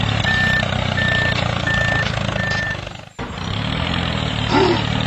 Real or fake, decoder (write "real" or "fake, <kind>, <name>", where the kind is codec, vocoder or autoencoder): real